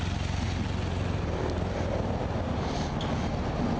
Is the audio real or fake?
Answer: real